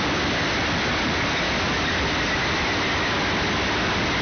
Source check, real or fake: real